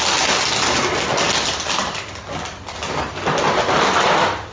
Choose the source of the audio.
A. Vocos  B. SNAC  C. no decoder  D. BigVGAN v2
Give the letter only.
C